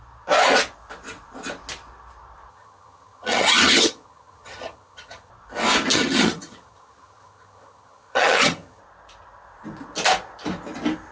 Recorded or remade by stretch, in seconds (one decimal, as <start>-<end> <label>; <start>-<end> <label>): 0.0-2.5 recorded; 2.5-5.3 remade; 5.3-5.9 recorded; 5.9-8.8 remade; 8.8-11.1 recorded